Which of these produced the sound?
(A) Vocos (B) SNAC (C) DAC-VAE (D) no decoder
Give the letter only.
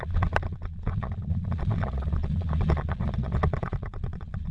A